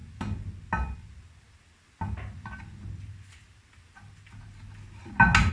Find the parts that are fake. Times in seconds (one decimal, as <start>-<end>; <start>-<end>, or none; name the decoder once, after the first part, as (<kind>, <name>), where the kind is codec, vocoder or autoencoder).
none